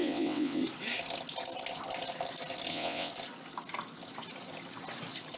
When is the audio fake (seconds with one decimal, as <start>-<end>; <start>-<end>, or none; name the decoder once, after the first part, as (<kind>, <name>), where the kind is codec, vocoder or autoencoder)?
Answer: 0.0-0.6 (vocoder, WaveNeXt); 2.7-3.1

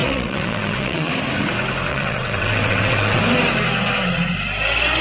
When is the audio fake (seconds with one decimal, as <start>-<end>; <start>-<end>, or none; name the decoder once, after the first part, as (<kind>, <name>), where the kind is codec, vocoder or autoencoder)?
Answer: 0.0-1.1 (vocoder, WaveNeXt); 1.9-3.2

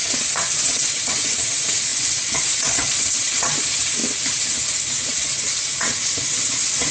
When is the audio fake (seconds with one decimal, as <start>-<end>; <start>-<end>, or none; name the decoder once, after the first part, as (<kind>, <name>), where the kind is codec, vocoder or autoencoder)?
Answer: 0.0-4.0 (vocoder, WaveNeXt); 4.8-6.9